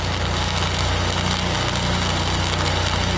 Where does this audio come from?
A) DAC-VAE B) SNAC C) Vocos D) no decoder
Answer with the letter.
D